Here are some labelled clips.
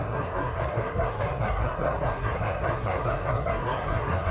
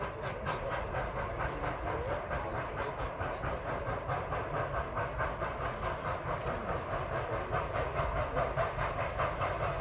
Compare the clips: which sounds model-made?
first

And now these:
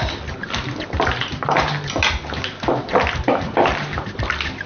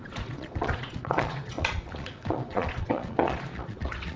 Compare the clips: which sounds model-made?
second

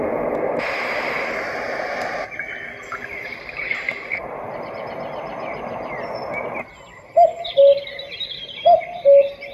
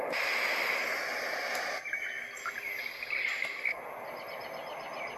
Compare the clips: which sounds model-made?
first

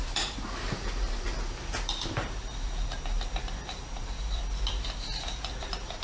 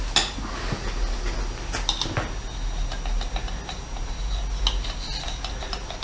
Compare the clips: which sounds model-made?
first